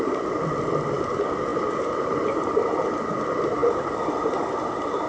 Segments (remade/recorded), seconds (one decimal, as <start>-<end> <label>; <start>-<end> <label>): 0.0-1.5 recorded; 1.5-2.9 remade; 2.9-5.1 recorded